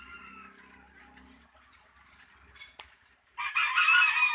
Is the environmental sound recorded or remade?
recorded